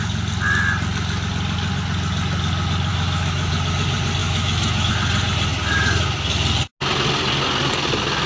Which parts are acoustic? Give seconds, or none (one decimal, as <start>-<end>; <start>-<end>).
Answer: 0.0-2.9; 3.5-4.2; 4.9-8.3